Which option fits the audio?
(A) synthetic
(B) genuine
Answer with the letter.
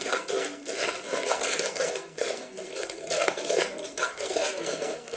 A